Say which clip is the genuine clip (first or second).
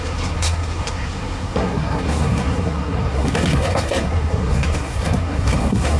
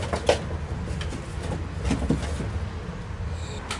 second